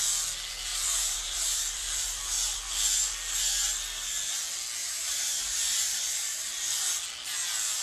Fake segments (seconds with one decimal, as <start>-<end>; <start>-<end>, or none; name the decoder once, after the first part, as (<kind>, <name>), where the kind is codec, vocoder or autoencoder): 0.7-2.6 (vocoder, BigVGAN v2); 4.8-6.9